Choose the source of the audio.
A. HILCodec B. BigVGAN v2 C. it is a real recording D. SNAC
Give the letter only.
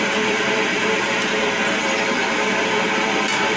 B